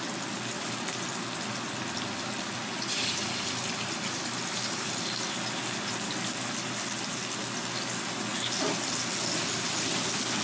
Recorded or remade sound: recorded